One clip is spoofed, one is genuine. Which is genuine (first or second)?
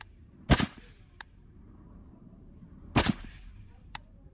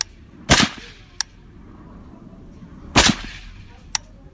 second